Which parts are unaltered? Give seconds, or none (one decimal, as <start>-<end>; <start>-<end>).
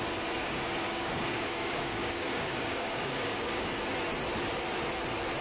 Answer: 0.0-0.4; 3.6-5.4